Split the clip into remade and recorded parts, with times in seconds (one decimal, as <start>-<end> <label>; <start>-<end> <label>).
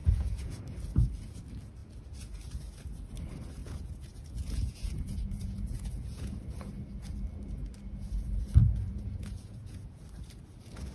0.0-0.6 remade; 0.6-3.6 recorded; 3.6-6.4 remade; 6.4-8.6 recorded; 8.6-10.0 remade; 10.0-10.9 recorded